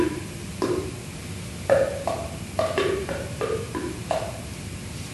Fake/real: real